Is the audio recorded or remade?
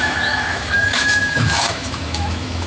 remade